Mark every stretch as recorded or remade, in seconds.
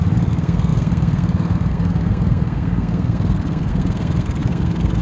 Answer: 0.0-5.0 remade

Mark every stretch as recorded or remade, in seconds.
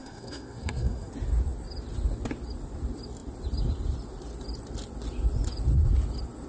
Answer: 0.0-1.1 remade; 1.1-6.5 recorded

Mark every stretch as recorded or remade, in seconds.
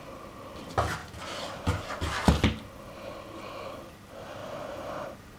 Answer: 0.0-5.4 recorded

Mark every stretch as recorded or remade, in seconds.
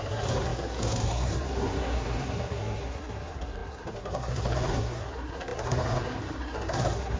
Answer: 0.0-7.2 remade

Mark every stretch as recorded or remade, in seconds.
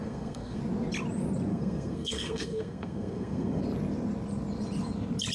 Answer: 0.0-0.6 remade; 0.6-1.5 recorded; 1.5-3.6 remade; 3.6-5.3 recorded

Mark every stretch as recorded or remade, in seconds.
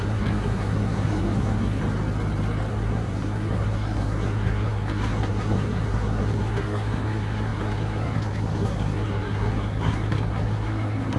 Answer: 0.0-1.8 remade; 1.8-2.7 recorded; 2.7-11.2 remade